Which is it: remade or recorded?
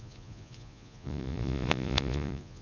remade